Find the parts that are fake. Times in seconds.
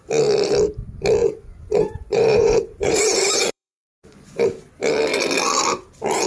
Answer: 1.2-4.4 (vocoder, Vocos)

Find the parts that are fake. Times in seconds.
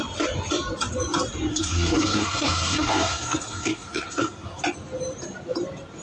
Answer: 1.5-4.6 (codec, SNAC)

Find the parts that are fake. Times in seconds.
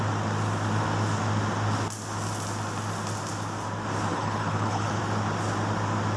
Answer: 4.1-5.0 (codec, HILCodec)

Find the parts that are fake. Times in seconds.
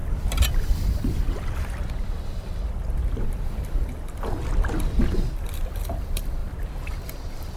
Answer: none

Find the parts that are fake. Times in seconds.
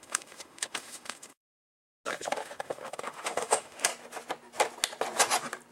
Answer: 0.0-1.4 (autoencoder, DAC-VAE); 2.1-3.9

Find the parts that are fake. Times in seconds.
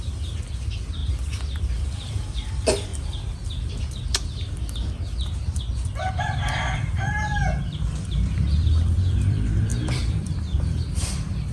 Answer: 0.0-1.0 (vocoder, BigVGAN v2); 1.6-2.9; 6.1-11.5